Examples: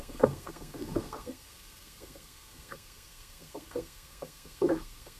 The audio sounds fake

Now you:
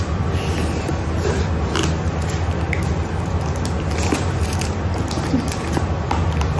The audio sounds real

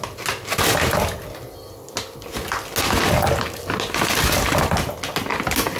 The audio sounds real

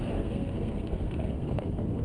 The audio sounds fake